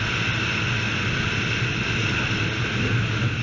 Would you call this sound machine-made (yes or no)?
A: no